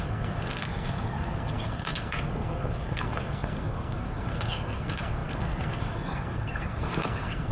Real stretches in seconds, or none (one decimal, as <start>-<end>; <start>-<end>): none